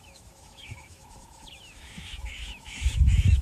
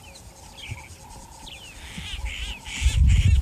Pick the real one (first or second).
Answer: second